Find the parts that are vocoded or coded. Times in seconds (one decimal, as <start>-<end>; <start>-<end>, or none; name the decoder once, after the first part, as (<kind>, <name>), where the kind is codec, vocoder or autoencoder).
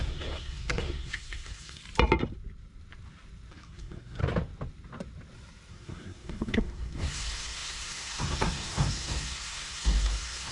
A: 0.0-1.8 (codec, SNAC); 3.5-4.2; 5.7-10.5